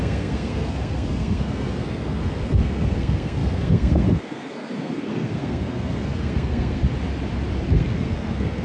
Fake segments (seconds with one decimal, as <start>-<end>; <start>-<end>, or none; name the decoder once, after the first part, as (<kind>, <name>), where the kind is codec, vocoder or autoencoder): 0.0-6.8 (codec, SNAC); 7.7-8.6